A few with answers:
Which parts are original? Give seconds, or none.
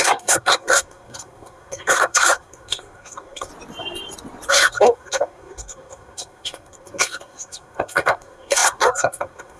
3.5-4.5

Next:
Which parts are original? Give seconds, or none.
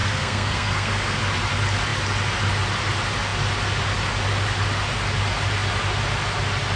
1.2-6.8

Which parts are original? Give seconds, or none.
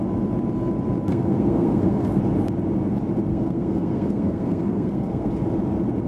0.0-1.1; 2.2-3.3; 5.3-6.1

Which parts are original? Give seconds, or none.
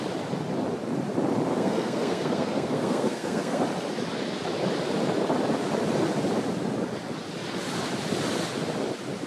0.0-1.5; 3.6-9.3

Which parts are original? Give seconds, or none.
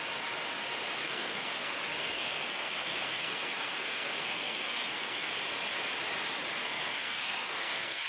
0.0-1.0; 5.3-6.6